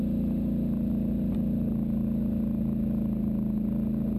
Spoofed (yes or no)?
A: no